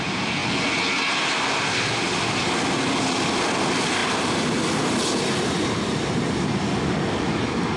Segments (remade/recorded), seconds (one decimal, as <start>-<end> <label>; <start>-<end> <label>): 0.0-7.8 recorded